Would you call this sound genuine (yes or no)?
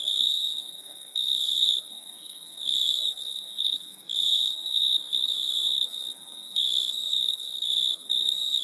no